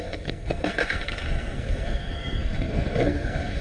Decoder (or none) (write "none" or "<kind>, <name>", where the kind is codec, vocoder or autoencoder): codec, SNAC